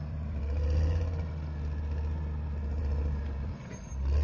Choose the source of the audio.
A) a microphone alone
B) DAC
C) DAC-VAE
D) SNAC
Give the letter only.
A